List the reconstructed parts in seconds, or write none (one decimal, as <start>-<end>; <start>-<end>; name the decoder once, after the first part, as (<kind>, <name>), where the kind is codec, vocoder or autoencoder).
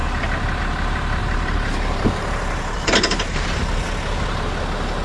1.2-3.6 (vocoder, BigVGAN v2)